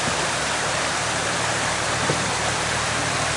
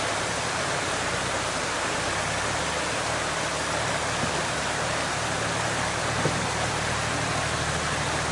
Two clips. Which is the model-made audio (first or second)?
first